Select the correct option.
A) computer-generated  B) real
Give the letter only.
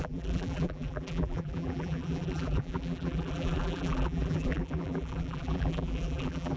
A